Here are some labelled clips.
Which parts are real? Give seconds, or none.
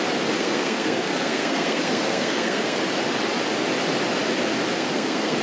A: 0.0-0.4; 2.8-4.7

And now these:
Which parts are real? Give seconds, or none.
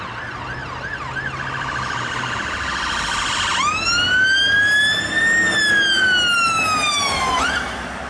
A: 0.0-8.1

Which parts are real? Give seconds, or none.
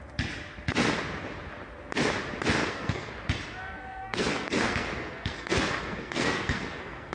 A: 0.0-2.6; 3.1-3.6